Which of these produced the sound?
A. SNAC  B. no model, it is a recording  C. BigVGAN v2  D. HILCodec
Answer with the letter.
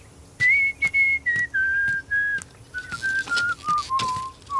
B